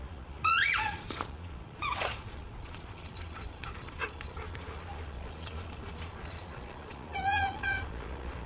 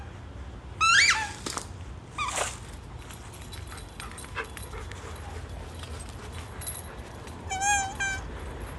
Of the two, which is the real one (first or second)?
second